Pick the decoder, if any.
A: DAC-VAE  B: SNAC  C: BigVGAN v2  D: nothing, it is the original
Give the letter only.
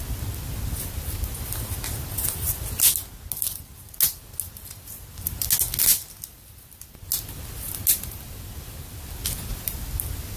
D